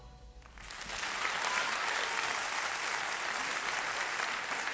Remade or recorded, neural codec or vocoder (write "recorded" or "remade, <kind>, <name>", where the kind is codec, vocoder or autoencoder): recorded